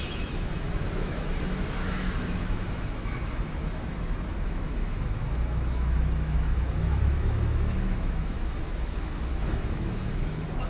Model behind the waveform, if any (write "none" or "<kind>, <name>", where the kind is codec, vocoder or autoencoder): autoencoder, DAC-VAE